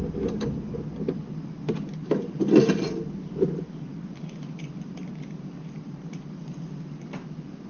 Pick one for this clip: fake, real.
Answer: real